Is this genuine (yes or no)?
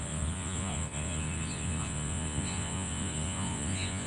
no